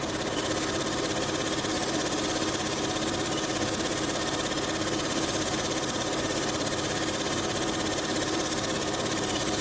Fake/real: real